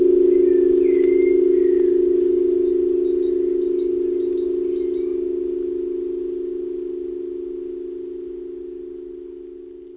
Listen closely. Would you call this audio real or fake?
real